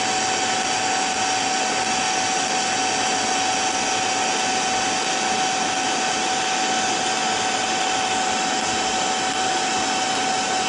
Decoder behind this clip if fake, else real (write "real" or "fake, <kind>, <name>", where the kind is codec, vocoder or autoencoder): real